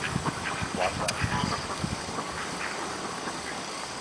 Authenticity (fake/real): fake